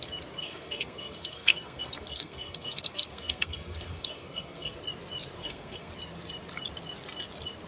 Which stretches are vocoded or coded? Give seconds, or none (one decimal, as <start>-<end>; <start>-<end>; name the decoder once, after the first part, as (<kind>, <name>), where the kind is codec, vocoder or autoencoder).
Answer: 0.4-4.8 (codec, SNAC); 5.4-5.9